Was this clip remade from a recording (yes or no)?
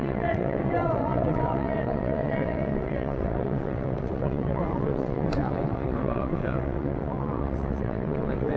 yes